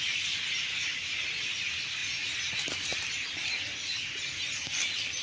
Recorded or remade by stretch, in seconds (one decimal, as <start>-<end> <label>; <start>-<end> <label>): 0.0-5.2 recorded